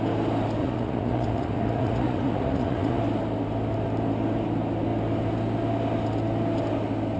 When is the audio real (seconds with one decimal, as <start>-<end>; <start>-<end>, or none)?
0.0-0.6; 3.0-7.2